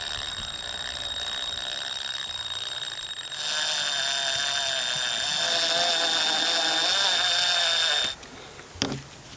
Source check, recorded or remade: recorded